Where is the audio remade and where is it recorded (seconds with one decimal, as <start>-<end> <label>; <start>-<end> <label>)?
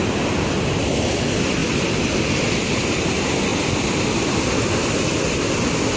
0.0-6.0 recorded